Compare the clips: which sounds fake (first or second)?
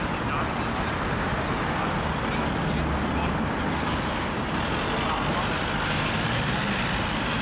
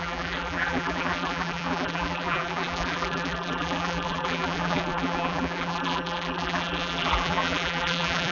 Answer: second